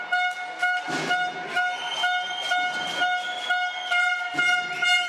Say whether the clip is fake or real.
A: real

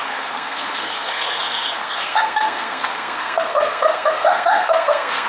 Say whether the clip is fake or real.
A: fake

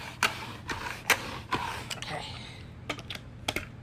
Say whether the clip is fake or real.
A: real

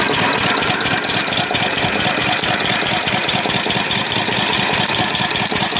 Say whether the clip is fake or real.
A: real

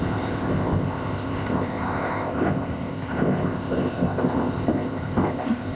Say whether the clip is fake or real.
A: fake